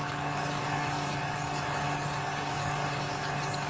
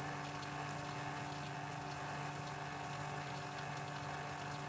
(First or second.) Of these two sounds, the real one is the second